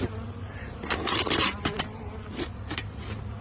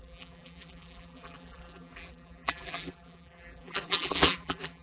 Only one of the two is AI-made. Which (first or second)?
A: second